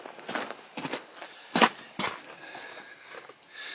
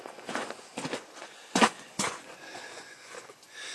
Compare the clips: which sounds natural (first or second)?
first